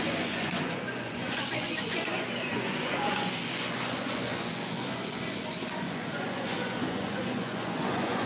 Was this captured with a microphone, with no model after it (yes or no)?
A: no